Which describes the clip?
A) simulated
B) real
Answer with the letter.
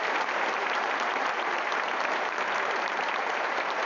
A